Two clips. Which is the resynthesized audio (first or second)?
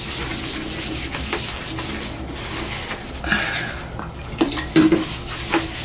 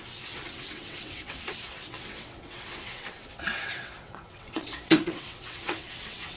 second